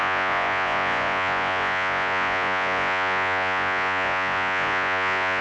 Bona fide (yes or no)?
no